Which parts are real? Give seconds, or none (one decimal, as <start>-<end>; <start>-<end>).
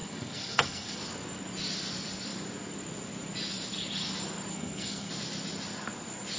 1.0-4.5; 5.1-6.4